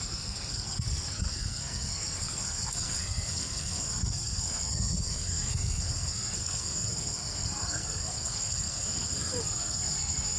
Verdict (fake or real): fake